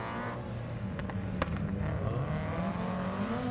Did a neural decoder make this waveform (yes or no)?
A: no